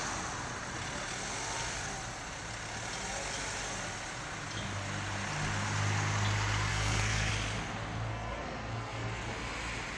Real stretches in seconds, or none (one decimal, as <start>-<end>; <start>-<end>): 0.0-6.7; 7.3-8.1; 9.3-10.0